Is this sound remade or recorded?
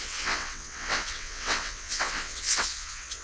remade